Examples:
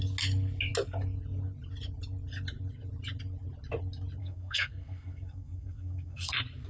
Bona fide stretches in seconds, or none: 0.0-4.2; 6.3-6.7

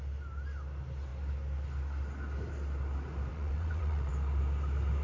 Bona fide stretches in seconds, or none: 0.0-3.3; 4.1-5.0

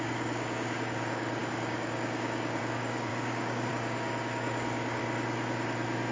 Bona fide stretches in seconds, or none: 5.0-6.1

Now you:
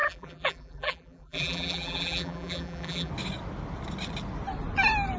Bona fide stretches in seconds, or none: 3.1-5.2

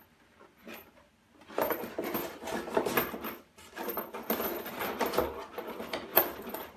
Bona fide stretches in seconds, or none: 0.0-6.1

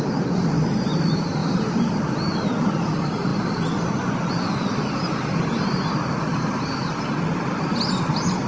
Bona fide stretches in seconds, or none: 0.0-8.5